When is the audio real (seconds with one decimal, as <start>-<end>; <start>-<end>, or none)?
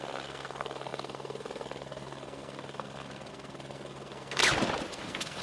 4.4-4.9